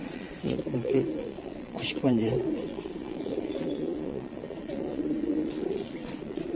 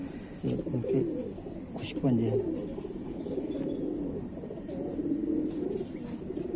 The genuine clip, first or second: second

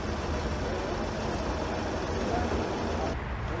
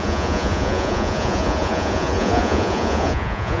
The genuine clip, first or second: first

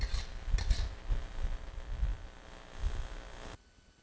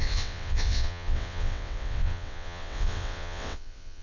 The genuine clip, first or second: first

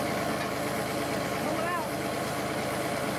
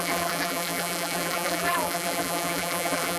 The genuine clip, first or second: first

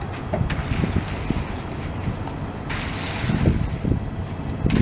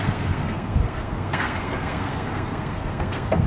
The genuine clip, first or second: first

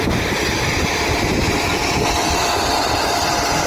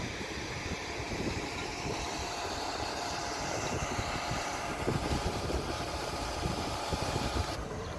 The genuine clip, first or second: first